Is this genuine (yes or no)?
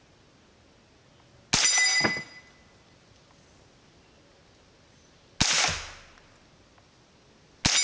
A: yes